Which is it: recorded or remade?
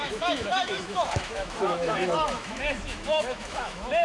remade